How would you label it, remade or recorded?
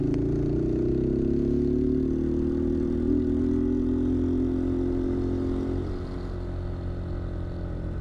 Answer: recorded